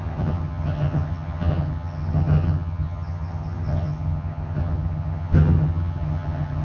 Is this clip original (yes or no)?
no